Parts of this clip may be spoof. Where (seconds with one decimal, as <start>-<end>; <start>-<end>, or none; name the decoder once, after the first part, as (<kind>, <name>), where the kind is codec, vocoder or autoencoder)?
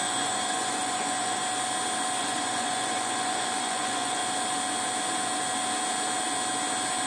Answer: 0.0-1.4 (vocoder, Vocos); 2.2-4.2